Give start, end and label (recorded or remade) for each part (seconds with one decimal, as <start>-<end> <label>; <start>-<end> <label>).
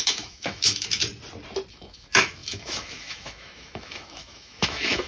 0.0-1.0 remade; 1.0-1.7 recorded; 1.7-5.1 remade